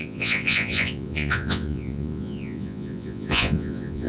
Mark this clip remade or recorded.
remade